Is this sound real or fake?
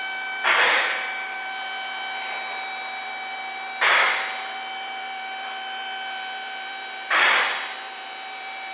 fake